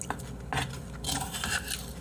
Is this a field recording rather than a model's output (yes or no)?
yes